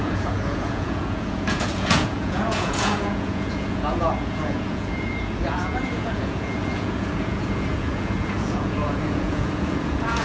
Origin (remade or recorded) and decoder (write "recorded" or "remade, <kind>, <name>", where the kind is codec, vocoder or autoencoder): remade, vocoder, Vocos